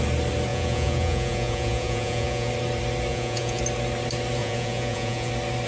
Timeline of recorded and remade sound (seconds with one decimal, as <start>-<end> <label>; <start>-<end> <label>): 0.0-0.5 recorded; 0.5-2.5 remade; 2.5-3.1 recorded; 3.1-3.6 remade; 3.6-4.4 recorded; 4.4-5.3 remade; 5.3-5.7 recorded